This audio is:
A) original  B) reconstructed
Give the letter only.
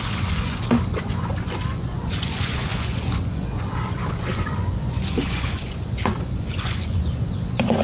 B